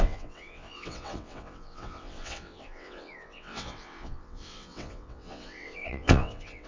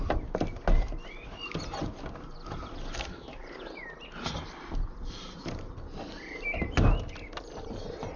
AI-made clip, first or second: first